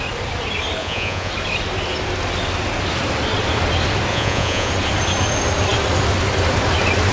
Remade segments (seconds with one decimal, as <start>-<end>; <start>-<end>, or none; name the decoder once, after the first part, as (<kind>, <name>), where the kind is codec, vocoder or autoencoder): 0.8-1.3 (vocoder, Vocos); 4.1-4.7